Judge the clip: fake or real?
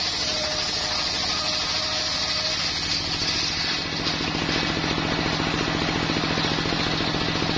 real